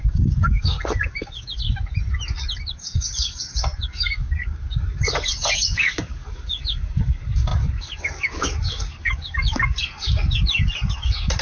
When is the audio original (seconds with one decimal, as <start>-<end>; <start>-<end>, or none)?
1.5-2.7